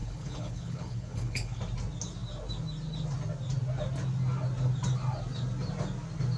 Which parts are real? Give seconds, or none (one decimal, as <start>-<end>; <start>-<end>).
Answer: 1.6-6.4